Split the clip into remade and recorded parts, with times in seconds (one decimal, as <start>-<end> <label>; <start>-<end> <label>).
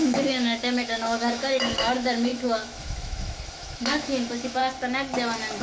0.0-4.6 remade; 4.6-5.6 recorded